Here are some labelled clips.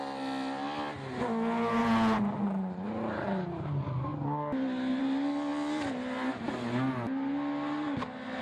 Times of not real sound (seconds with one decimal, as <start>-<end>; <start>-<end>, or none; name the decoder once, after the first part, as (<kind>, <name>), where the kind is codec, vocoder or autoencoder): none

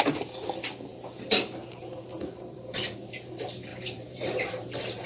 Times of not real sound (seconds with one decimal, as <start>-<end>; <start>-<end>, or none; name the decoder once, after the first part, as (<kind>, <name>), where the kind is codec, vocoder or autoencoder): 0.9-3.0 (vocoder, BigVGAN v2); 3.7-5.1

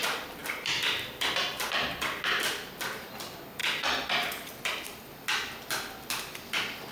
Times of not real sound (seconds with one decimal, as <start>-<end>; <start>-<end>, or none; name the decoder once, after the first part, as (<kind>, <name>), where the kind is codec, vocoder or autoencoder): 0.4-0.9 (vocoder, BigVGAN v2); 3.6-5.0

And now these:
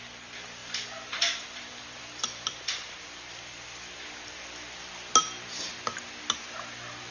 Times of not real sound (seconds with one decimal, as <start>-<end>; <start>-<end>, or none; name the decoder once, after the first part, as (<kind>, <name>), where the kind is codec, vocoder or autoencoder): 0.6-4.9 (vocoder, BigVGAN v2)